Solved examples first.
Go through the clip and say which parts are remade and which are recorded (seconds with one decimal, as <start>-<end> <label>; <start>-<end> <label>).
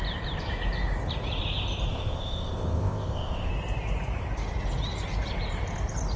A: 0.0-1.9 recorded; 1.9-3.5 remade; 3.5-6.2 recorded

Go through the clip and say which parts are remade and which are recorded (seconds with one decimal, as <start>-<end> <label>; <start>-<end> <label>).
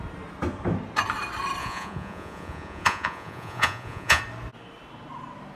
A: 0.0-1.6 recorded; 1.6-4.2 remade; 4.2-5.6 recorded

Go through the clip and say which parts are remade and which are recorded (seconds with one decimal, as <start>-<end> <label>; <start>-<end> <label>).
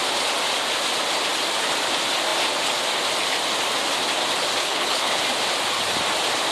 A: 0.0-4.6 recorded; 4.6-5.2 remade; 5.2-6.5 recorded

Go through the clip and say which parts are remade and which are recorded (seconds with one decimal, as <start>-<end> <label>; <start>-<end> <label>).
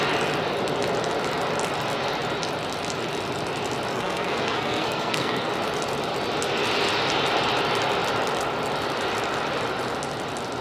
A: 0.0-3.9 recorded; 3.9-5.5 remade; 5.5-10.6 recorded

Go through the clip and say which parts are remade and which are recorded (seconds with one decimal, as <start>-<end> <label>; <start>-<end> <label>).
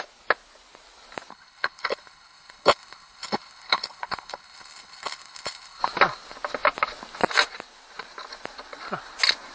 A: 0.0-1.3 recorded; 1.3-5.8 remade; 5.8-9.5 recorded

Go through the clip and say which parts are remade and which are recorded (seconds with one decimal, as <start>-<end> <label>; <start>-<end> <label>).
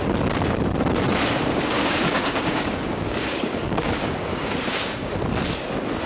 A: 0.0-1.4 recorded; 1.4-5.1 remade; 5.1-6.1 recorded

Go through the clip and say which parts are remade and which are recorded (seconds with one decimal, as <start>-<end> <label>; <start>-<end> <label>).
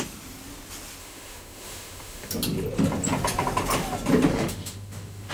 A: 0.0-1.0 recorded; 1.0-2.3 remade; 2.3-4.3 recorded; 4.3-5.3 remade